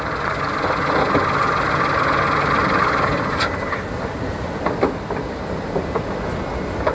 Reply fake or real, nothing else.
real